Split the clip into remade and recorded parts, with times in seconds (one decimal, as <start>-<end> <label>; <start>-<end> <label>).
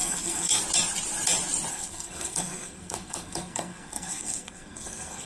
0.0-0.6 remade; 0.6-1.7 recorded; 1.7-5.3 remade